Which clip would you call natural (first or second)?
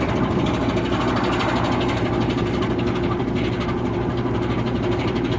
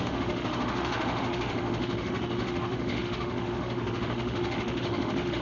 first